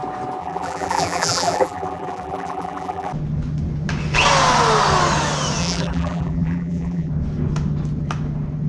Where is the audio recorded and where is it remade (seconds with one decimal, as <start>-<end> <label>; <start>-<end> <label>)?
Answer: 0.0-0.4 recorded; 0.4-3.1 remade; 3.1-5.6 recorded; 5.6-7.1 remade; 7.1-8.7 recorded